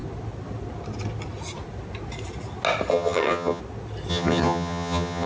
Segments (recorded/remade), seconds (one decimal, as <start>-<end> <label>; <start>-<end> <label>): 0.0-2.9 recorded; 2.9-3.6 remade; 3.6-4.1 recorded; 4.1-5.3 remade